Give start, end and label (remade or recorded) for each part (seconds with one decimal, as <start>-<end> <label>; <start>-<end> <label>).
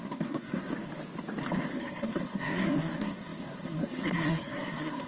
0.0-0.7 remade; 0.7-1.7 recorded; 1.7-5.1 remade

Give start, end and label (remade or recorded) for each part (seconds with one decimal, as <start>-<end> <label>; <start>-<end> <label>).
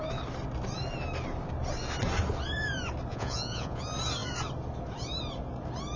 0.0-3.1 recorded; 3.1-3.8 remade; 3.8-6.0 recorded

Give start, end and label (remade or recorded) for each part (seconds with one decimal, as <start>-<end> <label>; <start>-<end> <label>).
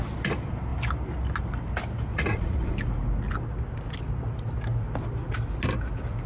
0.0-2.1 recorded; 2.1-2.7 remade; 2.7-6.3 recorded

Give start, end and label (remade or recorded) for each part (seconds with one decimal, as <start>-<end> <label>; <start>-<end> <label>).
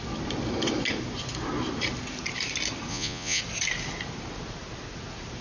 0.0-2.9 recorded; 2.9-3.4 remade; 3.4-5.4 recorded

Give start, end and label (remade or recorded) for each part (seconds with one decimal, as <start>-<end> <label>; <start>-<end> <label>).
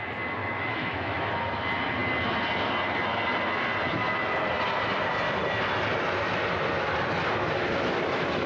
0.0-0.4 recorded; 0.4-1.3 remade; 1.3-8.5 recorded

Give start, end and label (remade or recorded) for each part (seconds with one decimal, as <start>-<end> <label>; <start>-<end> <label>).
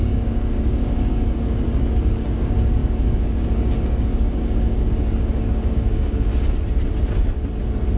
0.0-6.3 remade; 6.3-8.0 recorded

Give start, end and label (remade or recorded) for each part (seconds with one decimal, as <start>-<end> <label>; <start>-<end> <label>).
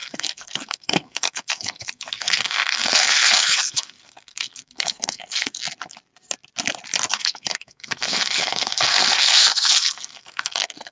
0.0-5.6 remade; 5.6-7.1 recorded; 7.1-10.9 remade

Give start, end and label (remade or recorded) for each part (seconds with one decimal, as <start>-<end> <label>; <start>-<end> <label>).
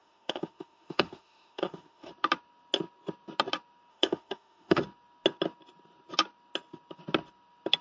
0.0-2.1 remade; 2.1-3.9 recorded; 3.9-4.8 remade; 4.8-7.8 recorded